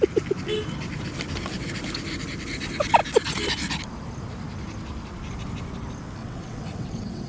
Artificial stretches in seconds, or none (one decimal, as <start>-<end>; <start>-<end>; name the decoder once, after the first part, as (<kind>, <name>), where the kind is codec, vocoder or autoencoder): 6.2-7.3 (vocoder, WaveNeXt)